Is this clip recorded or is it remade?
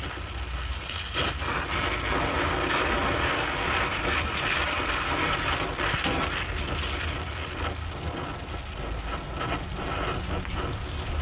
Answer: recorded